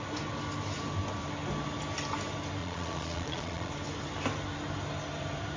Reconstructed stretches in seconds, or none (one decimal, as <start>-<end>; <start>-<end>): 2.6-3.7